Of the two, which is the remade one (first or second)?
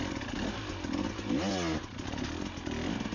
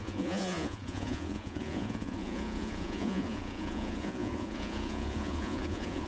second